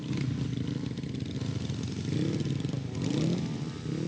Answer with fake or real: real